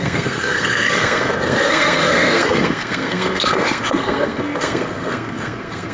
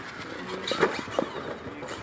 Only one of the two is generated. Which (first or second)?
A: first